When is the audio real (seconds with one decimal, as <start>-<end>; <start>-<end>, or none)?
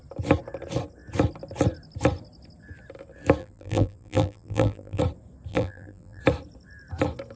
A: 0.0-3.4; 5.0-5.5; 6.2-7.4